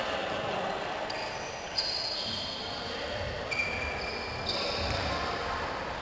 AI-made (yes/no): no